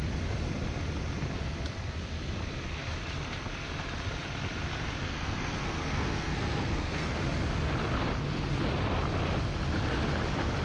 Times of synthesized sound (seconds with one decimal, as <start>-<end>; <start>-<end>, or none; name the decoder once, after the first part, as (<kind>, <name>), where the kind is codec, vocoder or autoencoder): 5.0-7.2 (codec, SNAC)